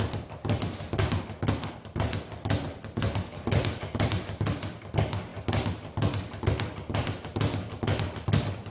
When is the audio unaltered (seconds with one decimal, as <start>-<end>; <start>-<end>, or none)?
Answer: 0.0-8.7

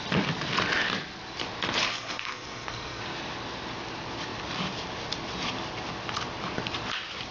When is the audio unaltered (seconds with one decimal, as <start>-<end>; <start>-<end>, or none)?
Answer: 0.0-1.9; 3.0-7.3

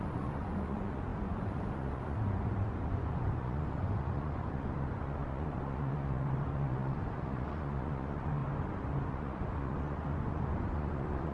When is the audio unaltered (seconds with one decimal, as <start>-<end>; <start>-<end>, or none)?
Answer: 8.4-9.1

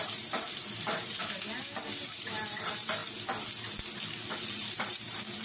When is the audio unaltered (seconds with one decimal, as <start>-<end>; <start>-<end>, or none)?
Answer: 1.2-2.0; 3.0-4.5

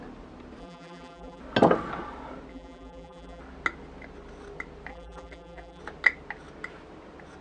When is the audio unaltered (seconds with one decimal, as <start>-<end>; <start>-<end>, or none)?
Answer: 0.0-0.6; 1.4-2.5; 3.4-4.9; 5.8-7.4